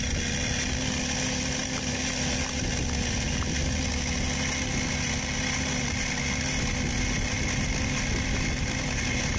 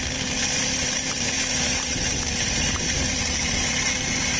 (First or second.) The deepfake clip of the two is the second